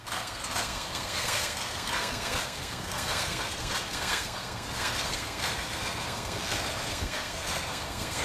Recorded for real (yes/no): no